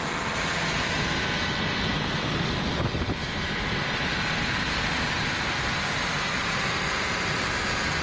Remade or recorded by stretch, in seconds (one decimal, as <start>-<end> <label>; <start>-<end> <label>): 0.0-1.9 recorded; 1.9-2.7 remade; 2.7-3.2 recorded; 3.2-7.5 remade; 7.5-8.0 recorded